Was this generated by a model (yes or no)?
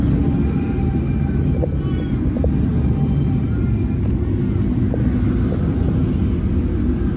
no